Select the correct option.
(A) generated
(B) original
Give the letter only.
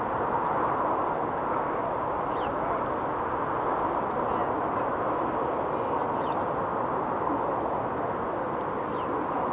B